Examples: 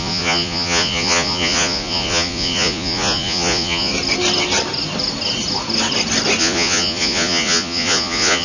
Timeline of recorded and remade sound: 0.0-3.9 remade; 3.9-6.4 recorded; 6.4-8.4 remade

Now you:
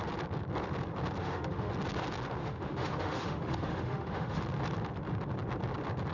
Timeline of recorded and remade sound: 0.0-1.2 recorded; 1.2-1.7 remade; 1.7-2.4 recorded; 2.4-4.4 remade; 4.4-6.1 recorded

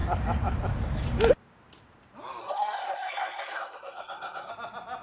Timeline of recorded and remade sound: 0.0-2.4 recorded; 2.4-4.5 remade; 4.5-5.0 recorded

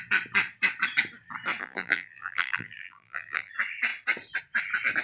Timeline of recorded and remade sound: 0.0-1.6 recorded; 1.6-3.5 remade; 3.5-5.0 recorded

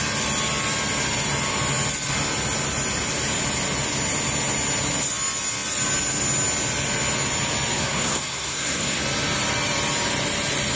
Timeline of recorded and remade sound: 0.0-7.7 recorded; 7.7-9.0 remade; 9.0-10.8 recorded

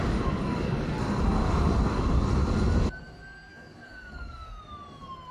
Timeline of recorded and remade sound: 0.0-0.9 remade; 0.9-3.5 recorded; 3.5-4.6 remade; 4.6-5.3 recorded

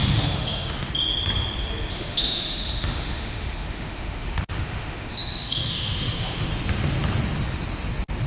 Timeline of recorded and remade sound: 0.0-0.9 remade; 0.9-1.9 recorded; 1.9-6.5 remade; 6.5-8.3 recorded

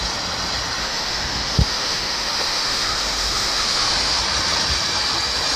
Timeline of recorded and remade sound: 0.0-0.8 recorded; 0.8-4.2 remade; 4.2-5.6 recorded